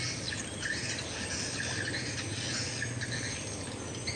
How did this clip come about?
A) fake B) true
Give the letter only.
B